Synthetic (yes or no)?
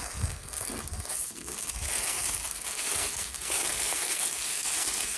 yes